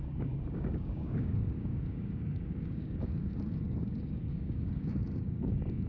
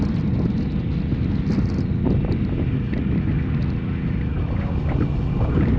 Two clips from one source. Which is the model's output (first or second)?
first